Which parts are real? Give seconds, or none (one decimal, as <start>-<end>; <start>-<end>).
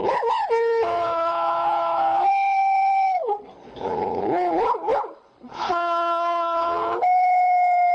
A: none